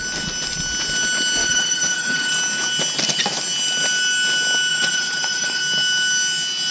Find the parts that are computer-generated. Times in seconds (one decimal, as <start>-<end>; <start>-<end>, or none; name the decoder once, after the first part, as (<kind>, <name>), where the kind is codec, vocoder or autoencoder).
1.4-2.3 (vocoder, Vocos); 4.7-5.6